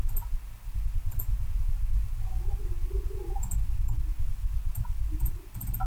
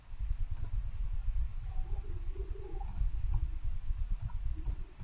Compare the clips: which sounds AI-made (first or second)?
second